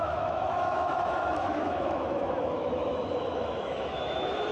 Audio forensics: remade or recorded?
remade